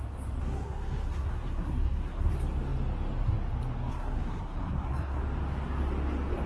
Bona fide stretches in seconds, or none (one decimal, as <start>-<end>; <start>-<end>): 0.0-0.4; 2.3-3.9; 5.2-6.5